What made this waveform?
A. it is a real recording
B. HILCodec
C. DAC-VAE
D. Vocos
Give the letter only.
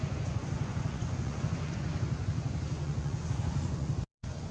D